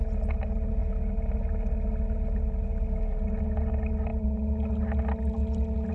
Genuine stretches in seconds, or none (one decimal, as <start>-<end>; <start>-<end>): 0.0-5.9